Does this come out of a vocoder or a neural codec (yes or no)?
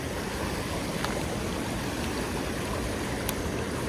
no